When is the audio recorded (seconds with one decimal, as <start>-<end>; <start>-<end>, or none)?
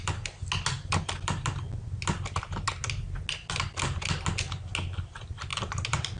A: 0.0-6.2